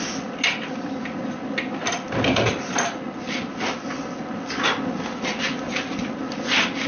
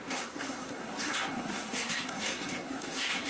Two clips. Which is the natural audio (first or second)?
first